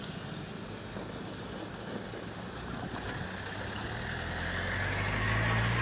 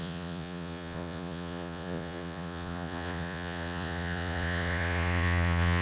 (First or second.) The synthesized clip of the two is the second